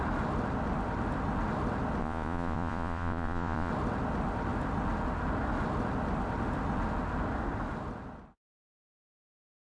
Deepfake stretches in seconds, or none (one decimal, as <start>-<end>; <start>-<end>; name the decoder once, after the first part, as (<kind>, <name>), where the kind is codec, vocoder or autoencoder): 2.0-3.7 (vocoder, Vocos)